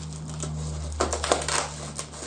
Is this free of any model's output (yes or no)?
yes